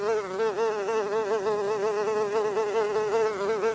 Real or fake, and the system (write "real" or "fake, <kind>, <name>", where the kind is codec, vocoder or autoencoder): real